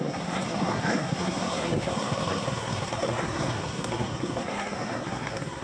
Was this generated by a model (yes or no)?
yes